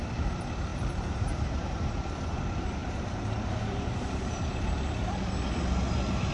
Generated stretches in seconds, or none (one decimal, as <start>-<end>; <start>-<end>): 0.7-1.9; 2.8-5.3